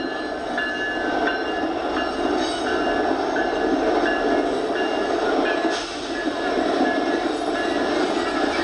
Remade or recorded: recorded